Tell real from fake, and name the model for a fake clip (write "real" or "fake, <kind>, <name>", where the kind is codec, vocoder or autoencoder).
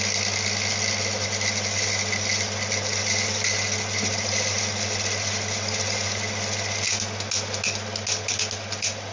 real